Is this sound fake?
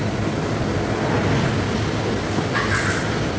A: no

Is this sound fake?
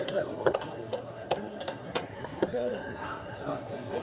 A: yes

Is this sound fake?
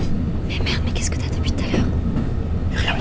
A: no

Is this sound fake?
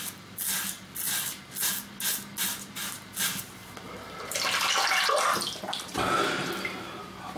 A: no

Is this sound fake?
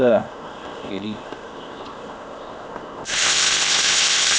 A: yes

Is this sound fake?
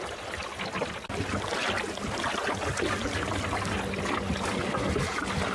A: no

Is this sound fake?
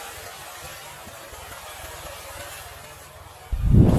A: no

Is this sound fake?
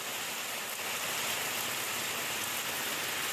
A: no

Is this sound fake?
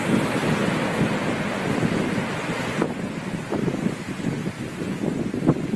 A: no